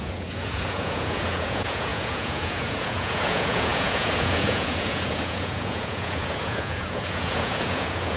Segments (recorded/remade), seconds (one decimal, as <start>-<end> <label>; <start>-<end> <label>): 0.0-8.2 remade